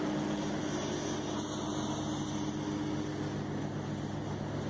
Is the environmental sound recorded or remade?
recorded